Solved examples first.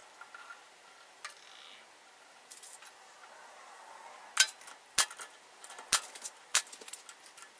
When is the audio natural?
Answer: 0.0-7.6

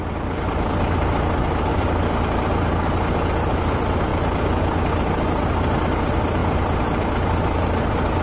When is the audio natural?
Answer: 0.0-8.2